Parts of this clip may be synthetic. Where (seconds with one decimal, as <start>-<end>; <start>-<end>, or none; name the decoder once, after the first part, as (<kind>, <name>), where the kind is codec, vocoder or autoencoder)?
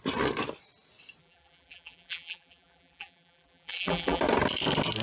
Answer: 1.2-4.2 (vocoder, BigVGAN v2)